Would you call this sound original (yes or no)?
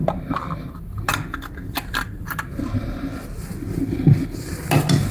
yes